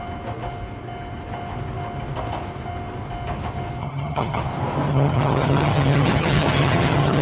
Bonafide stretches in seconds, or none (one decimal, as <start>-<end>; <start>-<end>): 0.0-3.8; 4.4-4.9